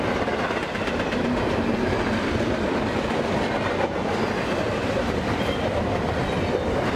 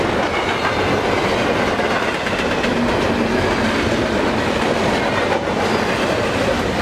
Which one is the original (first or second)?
second